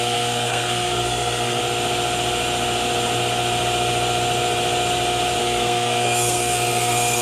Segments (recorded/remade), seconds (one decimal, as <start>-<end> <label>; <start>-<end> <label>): 0.0-1.6 remade; 1.6-5.4 recorded; 5.4-7.2 remade